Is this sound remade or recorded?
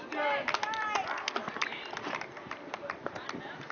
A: recorded